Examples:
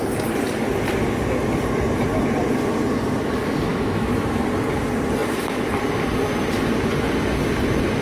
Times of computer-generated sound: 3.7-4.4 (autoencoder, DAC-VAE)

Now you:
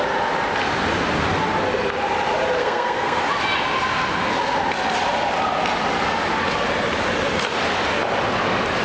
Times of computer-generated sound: 2.6-3.2 (codec, SNAC)

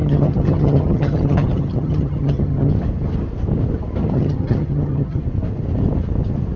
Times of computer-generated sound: 0.0-2.7 (vocoder, HiFi-GAN); 4.0-5.2